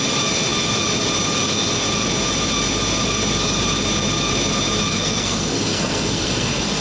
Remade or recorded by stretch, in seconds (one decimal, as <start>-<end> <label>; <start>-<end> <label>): 0.0-4.9 recorded; 4.9-6.8 remade